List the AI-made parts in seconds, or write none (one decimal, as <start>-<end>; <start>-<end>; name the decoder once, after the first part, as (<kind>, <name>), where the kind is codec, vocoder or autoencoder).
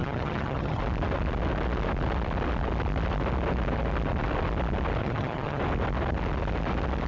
0.0-0.8 (vocoder, HiFi-GAN); 5.0-5.6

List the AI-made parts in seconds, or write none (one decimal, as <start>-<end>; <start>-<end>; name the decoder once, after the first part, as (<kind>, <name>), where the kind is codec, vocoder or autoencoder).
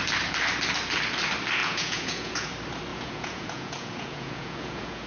1.6-2.5 (vocoder, Vocos); 2.9-5.1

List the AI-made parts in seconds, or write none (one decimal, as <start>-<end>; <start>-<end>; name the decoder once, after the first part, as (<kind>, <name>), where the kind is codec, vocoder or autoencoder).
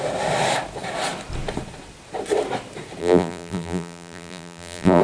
3.0-5.0 (vocoder, BigVGAN v2)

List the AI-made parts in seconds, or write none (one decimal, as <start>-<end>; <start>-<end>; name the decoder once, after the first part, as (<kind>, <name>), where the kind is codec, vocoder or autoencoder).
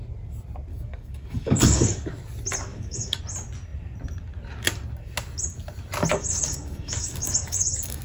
0.7-2.1 (codec, DAC); 2.7-3.2; 6.1-8.0